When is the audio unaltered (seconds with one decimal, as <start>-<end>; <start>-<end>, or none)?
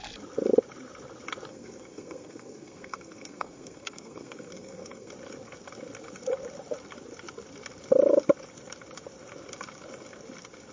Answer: 0.0-1.5; 5.1-10.7